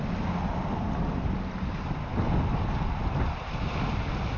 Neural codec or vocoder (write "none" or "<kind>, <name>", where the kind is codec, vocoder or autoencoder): none